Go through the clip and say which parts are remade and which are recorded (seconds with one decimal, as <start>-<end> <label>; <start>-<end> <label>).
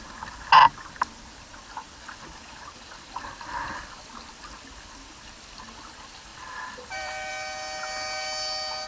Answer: 0.0-2.4 recorded; 2.4-3.7 remade; 3.7-6.3 recorded; 6.3-7.3 remade; 7.3-8.9 recorded